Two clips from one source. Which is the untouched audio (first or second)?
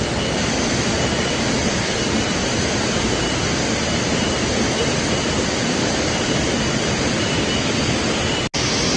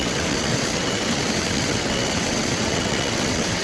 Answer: first